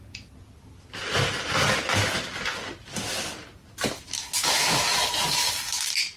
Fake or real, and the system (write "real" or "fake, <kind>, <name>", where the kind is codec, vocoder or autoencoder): real